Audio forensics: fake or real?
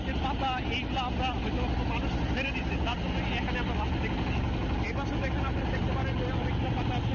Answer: real